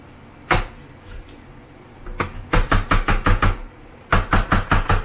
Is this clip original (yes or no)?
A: yes